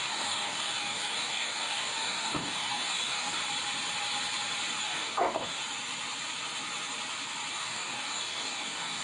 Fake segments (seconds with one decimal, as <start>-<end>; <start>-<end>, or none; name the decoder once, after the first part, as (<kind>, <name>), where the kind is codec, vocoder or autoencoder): 0.0-3.4 (codec, DAC); 4.8-5.6; 7.5-9.0